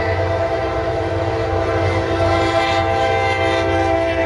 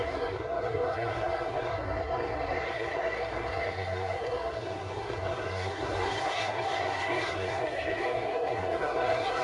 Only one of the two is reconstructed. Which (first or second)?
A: second